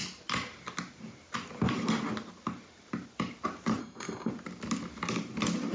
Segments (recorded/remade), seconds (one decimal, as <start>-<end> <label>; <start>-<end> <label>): 0.0-3.8 recorded; 3.8-4.3 remade; 4.3-5.7 recorded